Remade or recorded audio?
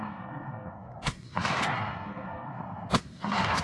remade